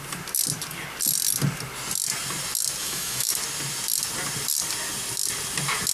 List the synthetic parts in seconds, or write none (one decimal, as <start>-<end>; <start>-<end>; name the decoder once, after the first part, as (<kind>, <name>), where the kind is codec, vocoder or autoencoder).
2.8-3.3 (autoencoder, DAC-VAE)